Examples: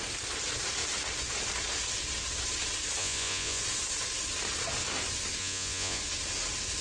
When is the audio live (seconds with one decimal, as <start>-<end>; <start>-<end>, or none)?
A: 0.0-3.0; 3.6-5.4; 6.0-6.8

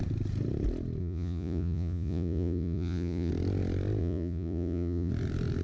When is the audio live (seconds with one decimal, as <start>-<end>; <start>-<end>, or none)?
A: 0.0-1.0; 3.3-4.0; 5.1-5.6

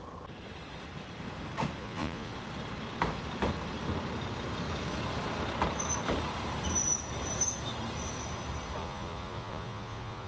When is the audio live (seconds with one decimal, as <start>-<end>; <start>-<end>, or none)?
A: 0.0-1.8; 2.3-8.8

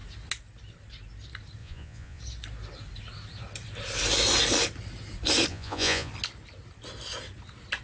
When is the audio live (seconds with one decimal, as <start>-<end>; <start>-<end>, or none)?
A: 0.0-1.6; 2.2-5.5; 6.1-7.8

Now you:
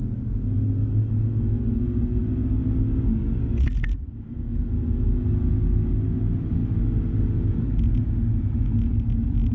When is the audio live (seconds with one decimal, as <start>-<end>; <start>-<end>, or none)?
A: 0.0-9.5

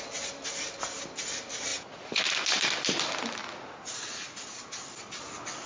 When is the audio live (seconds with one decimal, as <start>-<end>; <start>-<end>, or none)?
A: 0.0-1.7; 2.2-3.4; 4.0-5.7

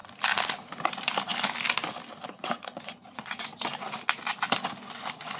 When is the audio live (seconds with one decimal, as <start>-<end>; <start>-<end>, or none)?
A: 0.0-2.2; 3.5-4.9

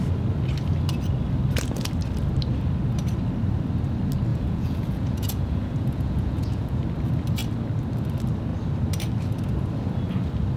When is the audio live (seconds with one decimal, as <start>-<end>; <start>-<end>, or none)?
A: 0.0-4.3; 6.8-10.6